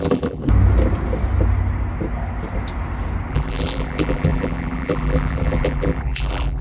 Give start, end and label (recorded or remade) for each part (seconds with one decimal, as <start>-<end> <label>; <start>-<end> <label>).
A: 0.0-0.4 remade; 0.4-3.3 recorded; 3.3-6.6 remade